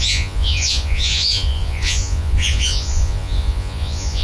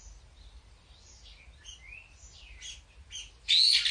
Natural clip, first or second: second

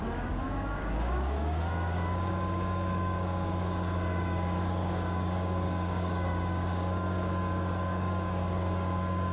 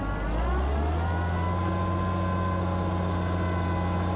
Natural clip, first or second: second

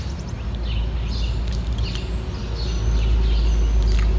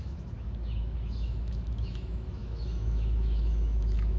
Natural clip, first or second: first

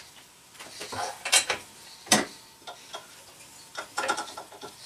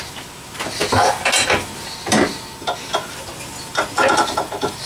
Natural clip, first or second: second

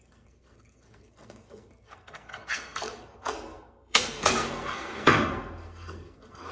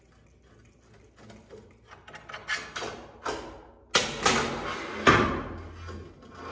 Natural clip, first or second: second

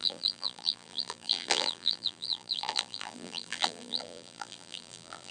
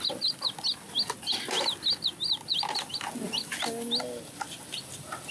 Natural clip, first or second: second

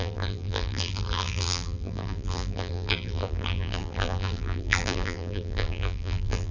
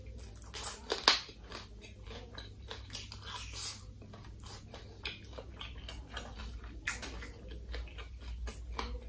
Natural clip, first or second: second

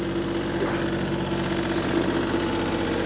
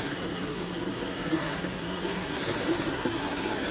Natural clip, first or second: first